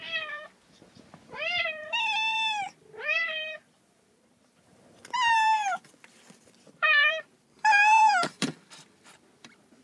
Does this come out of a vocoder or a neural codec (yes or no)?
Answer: yes